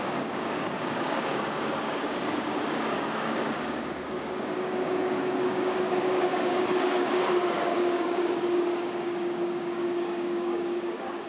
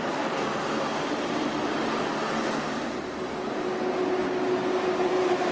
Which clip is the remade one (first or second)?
first